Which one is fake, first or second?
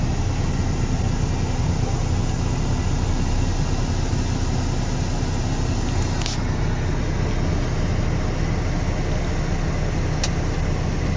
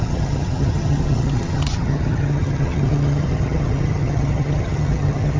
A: second